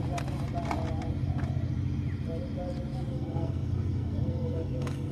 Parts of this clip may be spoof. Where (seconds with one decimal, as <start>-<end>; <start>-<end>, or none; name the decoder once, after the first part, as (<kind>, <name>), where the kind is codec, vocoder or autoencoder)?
3.1-5.1 (codec, SNAC)